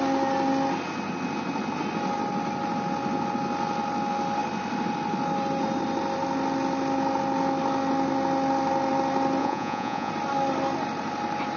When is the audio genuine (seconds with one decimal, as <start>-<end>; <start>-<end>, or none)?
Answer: 0.0-9.4; 10.1-11.6